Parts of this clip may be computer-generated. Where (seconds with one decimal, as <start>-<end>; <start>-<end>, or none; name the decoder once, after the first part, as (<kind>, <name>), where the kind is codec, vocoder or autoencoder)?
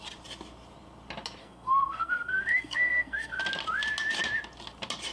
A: 1.4-3.4 (codec, SNAC)